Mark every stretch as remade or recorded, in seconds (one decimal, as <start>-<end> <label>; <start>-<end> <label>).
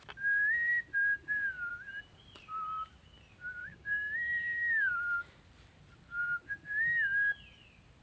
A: 0.0-3.6 recorded; 3.6-4.9 remade; 4.9-8.0 recorded